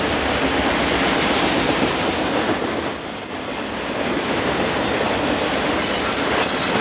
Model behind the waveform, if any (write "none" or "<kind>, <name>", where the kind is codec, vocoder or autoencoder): none